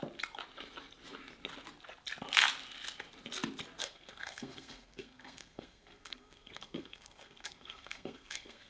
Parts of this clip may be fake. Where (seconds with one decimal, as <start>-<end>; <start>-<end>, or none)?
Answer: 3.8-8.7